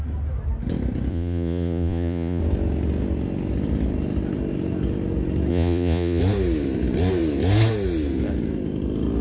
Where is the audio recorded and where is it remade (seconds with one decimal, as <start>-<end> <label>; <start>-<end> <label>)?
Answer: 0.0-1.1 recorded; 1.1-2.4 remade; 2.4-5.5 recorded; 5.5-6.2 remade; 6.2-9.2 recorded